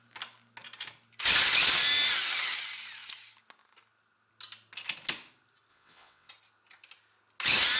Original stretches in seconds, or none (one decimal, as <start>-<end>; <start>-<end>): 0.0-5.7; 6.3-7.8